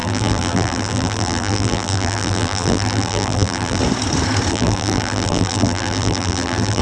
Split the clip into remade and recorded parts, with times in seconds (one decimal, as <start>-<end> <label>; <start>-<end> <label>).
0.0-3.8 remade; 3.8-4.5 recorded; 4.5-6.8 remade